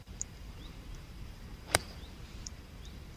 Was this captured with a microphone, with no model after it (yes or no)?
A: no